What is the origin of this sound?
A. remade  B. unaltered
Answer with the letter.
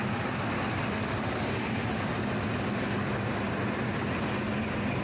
B